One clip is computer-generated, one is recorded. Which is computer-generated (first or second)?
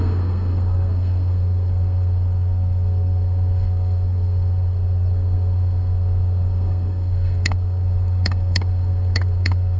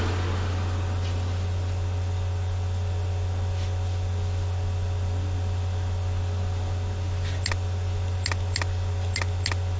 first